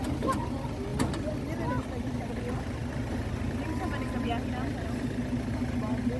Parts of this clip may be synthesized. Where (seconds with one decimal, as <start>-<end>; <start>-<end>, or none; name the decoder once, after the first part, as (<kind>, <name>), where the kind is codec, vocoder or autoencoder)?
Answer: none